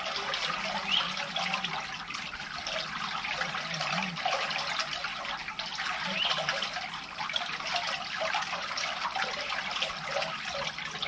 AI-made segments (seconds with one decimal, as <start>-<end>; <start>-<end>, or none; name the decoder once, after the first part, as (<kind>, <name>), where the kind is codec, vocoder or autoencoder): none